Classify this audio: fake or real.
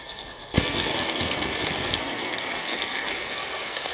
fake